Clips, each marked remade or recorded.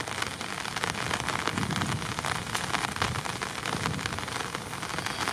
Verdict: recorded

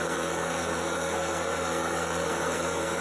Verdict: remade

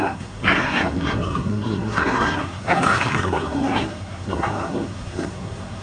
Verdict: remade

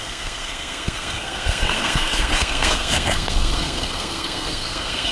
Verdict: remade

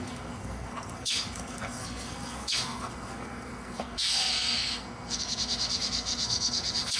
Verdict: remade